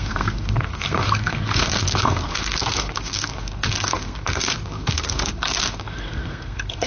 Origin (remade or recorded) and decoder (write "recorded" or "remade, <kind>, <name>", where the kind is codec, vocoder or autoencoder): remade, codec, SNAC